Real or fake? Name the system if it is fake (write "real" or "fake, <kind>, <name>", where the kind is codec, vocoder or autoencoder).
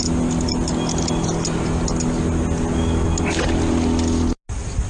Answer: real